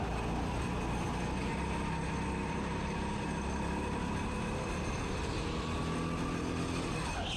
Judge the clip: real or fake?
real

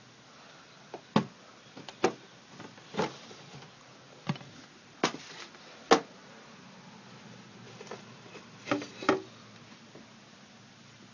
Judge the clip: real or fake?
real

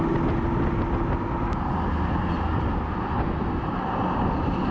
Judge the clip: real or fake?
real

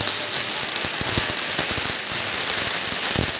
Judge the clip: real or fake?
real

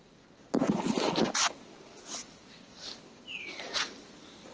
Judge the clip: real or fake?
real